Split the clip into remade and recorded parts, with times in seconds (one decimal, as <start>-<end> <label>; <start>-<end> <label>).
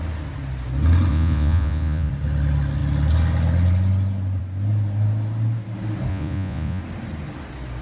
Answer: 0.0-1.1 recorded; 1.1-2.1 remade; 2.1-6.1 recorded; 6.1-6.8 remade; 6.8-7.8 recorded